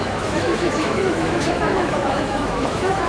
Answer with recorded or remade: remade